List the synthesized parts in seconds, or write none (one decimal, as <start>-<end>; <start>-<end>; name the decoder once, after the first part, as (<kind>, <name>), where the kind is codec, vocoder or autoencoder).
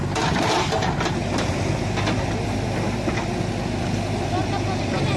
none